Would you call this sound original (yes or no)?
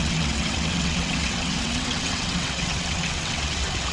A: no